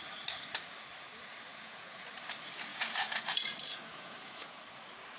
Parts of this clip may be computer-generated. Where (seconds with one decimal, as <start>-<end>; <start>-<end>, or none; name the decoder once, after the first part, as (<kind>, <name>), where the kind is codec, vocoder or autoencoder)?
1.5-2.1 (vocoder, Vocos); 2.7-4.6